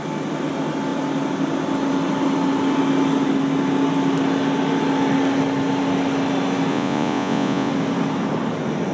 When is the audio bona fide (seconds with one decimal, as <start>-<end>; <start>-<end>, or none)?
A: 0.0-6.7; 7.7-8.9

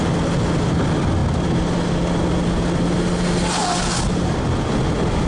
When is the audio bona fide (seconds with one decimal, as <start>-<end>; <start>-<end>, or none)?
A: 0.0-5.3

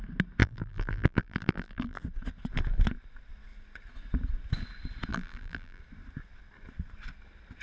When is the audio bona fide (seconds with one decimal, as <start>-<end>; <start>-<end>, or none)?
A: 0.0-0.4; 2.0-5.1; 5.8-7.6

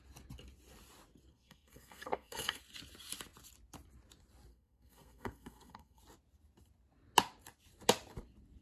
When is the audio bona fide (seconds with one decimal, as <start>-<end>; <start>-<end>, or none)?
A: 0.0-1.3; 2.6-4.5; 6.0-8.6

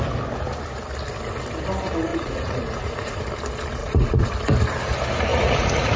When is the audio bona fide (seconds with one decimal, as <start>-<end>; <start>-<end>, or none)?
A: 0.0-2.1; 3.2-3.8; 4.6-5.3

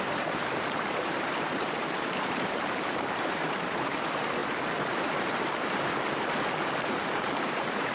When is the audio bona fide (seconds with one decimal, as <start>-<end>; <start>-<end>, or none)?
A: 4.4-6.8

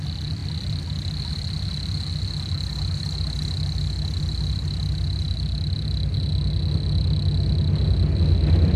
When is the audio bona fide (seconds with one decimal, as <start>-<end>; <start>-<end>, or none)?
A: 0.0-8.8